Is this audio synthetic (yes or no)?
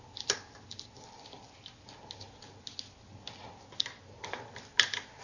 no